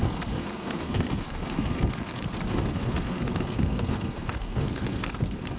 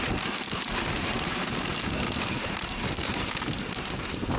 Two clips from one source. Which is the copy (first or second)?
first